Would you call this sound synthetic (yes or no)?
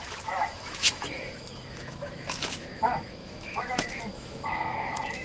yes